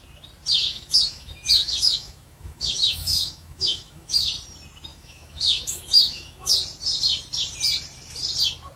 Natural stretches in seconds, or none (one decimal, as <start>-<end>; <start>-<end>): 0.0-0.6; 4.3-4.9; 6.5-8.8